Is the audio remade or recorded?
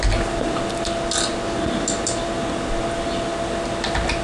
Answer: recorded